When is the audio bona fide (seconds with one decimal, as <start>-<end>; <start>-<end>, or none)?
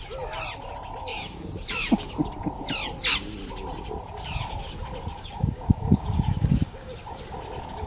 0.0-5.1; 7.2-7.9